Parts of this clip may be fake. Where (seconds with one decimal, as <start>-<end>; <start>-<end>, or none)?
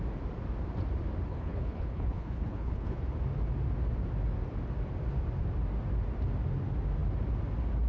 1.3-3.0